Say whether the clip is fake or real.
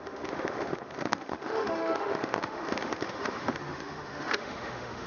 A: fake